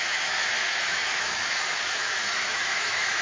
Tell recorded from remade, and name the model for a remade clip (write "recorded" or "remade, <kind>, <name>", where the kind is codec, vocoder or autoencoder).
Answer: remade, autoencoder, DAC-VAE